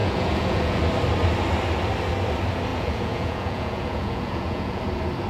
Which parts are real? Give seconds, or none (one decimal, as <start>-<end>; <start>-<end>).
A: 0.8-2.7; 4.8-5.3